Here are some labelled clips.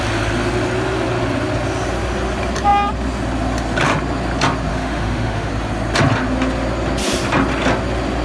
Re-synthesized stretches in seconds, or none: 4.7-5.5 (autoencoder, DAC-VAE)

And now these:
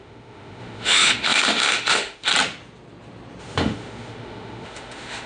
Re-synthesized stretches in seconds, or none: 0.0-2.3 (autoencoder, DAC-VAE); 3.4-5.3

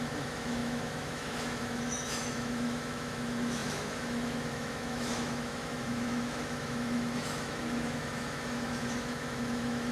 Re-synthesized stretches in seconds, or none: 0.0-9.9 (autoencoder, DAC-VAE)

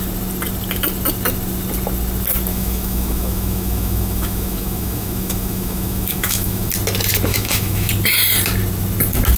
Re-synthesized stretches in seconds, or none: 2.5-6.7 (autoencoder, DAC-VAE); 7.3-7.9

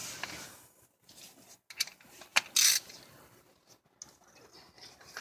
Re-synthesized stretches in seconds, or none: none